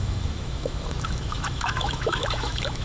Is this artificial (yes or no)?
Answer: yes